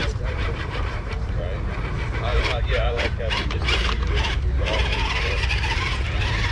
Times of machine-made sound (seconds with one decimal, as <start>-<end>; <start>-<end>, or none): 0.0-1.4; 2.3-6.5